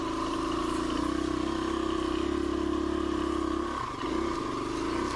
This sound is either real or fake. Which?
real